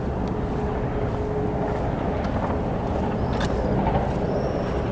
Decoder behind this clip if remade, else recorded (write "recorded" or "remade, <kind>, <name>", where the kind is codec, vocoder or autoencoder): recorded